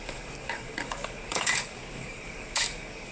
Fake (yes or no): yes